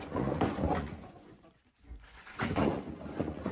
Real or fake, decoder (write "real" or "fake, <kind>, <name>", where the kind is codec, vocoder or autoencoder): fake, vocoder, Vocos